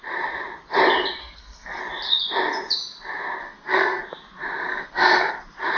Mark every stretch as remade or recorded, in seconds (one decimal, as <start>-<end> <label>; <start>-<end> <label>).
0.0-1.2 recorded; 1.2-1.8 remade; 1.8-3.4 recorded; 3.4-4.0 remade; 4.0-4.7 recorded; 4.7-5.3 remade; 5.3-5.8 recorded